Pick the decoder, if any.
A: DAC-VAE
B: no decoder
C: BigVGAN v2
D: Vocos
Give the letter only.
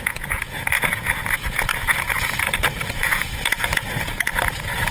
D